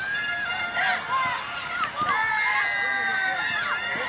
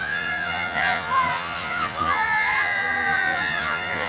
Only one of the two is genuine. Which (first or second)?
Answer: first